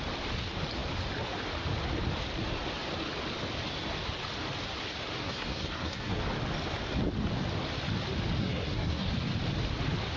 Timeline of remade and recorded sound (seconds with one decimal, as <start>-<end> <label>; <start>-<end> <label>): 0.0-5.2 recorded; 5.2-6.2 remade; 6.2-8.4 recorded; 8.4-9.1 remade; 9.1-10.2 recorded